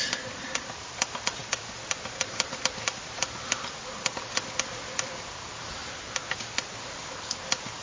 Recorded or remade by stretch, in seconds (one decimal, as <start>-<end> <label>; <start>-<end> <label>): 0.0-5.8 remade; 5.8-6.7 recorded; 6.7-7.8 remade